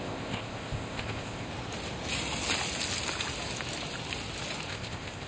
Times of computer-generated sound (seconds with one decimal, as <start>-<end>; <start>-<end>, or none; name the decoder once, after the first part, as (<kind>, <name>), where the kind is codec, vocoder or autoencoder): 0.0-1.5 (codec, ZipCodec); 4.7-5.3